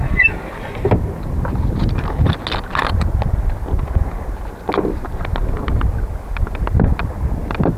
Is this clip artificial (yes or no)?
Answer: no